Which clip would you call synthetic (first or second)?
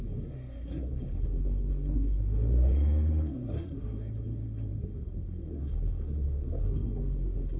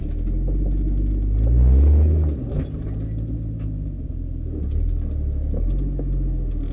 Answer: first